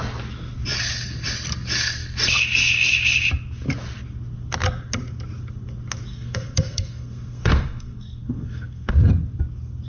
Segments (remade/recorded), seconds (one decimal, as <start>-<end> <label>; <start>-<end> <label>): 0.0-6.1 recorded; 6.1-8.9 remade; 8.9-9.9 recorded